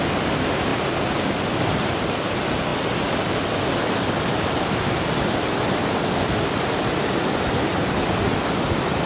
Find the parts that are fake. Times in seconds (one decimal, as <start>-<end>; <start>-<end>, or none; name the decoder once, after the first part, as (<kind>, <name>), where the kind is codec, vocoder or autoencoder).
none